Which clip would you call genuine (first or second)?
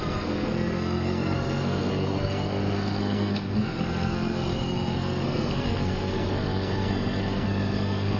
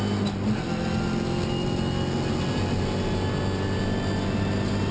second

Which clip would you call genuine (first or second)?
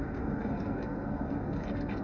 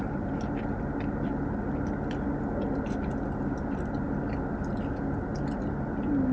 second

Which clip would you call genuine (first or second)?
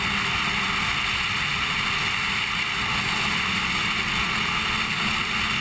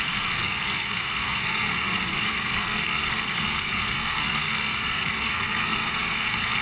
first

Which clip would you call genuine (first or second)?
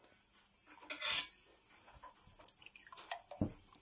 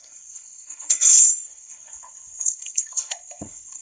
first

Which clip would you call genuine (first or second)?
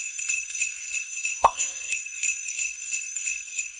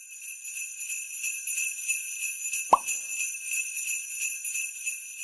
second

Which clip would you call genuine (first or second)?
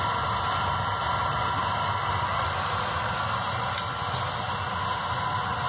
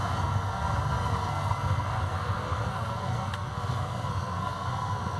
first